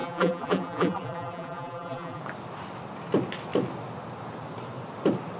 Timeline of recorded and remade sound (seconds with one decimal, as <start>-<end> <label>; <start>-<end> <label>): 0.0-2.2 remade; 2.2-5.4 recorded

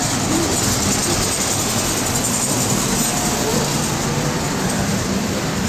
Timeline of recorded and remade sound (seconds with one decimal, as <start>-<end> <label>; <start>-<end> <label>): 0.0-3.5 recorded; 3.5-5.7 remade